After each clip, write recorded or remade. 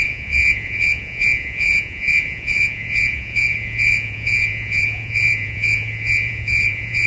remade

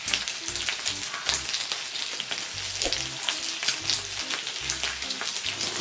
recorded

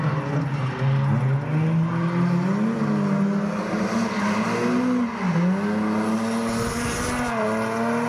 recorded